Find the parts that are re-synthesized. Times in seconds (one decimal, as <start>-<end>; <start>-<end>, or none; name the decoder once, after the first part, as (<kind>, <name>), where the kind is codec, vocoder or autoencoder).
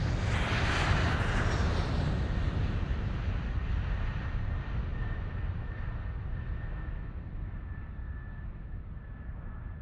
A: none